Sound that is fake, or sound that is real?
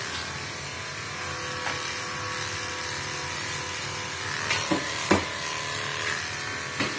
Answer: real